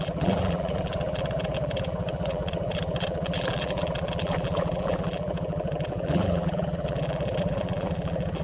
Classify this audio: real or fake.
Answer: fake